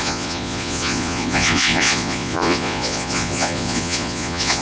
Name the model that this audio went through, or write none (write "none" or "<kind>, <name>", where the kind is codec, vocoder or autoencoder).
vocoder, Vocos